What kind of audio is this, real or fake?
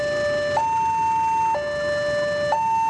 real